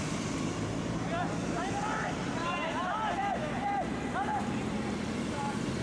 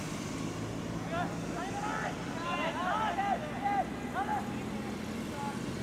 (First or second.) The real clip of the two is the second